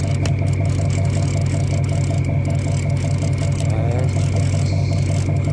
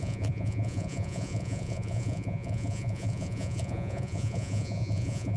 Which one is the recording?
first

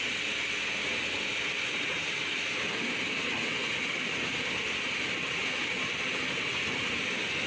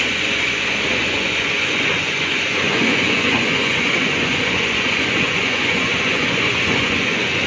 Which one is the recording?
first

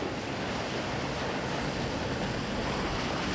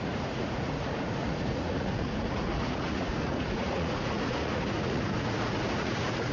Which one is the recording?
first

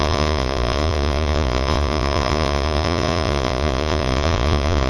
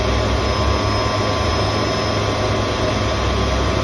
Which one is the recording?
second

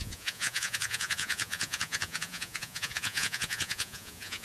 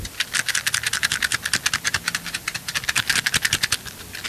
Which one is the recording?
second